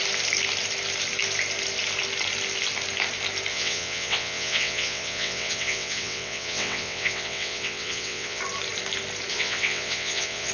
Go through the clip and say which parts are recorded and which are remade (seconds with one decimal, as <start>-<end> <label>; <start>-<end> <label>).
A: 0.0-3.5 recorded; 3.5-8.4 remade; 8.4-9.3 recorded; 9.3-10.5 remade

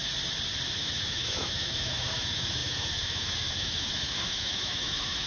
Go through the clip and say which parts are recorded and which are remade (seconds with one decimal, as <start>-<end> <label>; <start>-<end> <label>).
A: 0.0-0.8 recorded; 0.8-5.3 remade

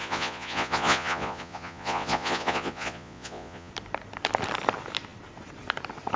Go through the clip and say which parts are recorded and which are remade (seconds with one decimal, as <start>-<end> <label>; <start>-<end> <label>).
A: 0.0-3.7 remade; 3.7-6.2 recorded

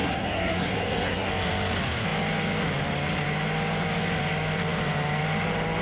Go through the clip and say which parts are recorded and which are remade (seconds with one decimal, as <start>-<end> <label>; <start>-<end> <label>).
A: 0.0-1.3 remade; 1.3-5.8 recorded